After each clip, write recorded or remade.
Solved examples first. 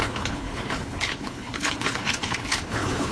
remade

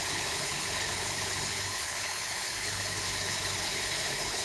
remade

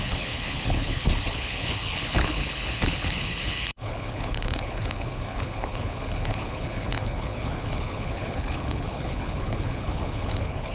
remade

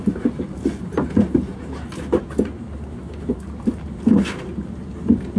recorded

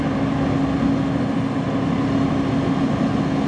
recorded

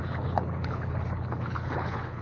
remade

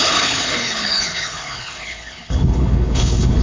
remade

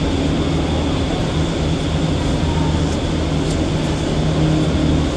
recorded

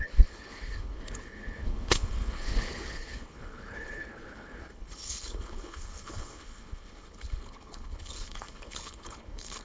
remade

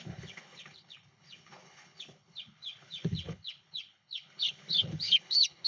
remade